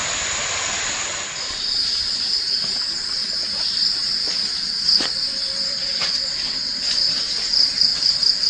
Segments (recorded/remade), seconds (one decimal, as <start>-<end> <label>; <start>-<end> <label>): 0.0-5.7 recorded; 5.7-6.8 remade; 6.8-8.5 recorded